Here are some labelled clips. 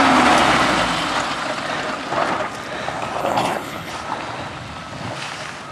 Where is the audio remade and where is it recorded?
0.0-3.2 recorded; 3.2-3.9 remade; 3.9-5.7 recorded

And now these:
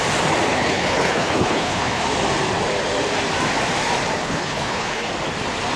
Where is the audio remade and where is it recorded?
0.0-0.5 recorded; 0.5-2.0 remade; 2.0-4.2 recorded; 4.2-5.1 remade; 5.1-5.8 recorded

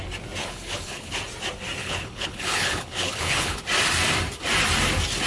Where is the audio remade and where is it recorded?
0.0-0.4 recorded; 0.4-1.2 remade; 1.2-1.8 recorded; 1.8-3.6 remade; 3.6-5.3 recorded

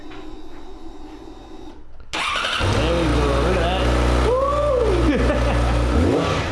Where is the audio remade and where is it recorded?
0.0-6.5 recorded

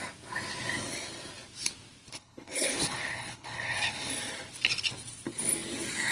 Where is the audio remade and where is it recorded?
0.0-2.1 recorded; 2.1-4.1 remade; 4.1-6.1 recorded

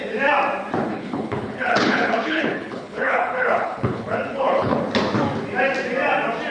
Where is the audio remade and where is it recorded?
0.0-0.9 recorded; 0.9-4.8 remade; 4.8-6.5 recorded

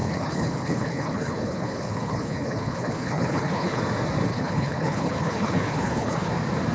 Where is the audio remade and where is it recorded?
0.0-3.8 remade; 3.8-4.3 recorded; 4.3-6.3 remade; 6.3-6.7 recorded